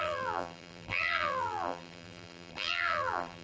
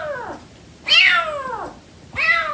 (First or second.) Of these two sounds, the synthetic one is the first